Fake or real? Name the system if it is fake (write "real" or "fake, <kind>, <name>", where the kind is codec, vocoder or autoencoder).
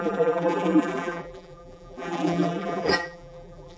fake, vocoder, BigVGAN v2